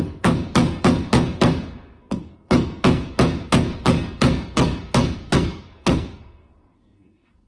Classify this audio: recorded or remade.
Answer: remade